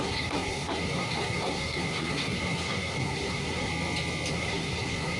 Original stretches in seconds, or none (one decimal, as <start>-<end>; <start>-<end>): 3.7-4.3